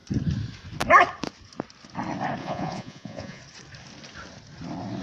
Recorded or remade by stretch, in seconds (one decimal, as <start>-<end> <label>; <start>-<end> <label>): 0.0-2.4 recorded; 2.4-3.4 remade; 3.4-5.0 recorded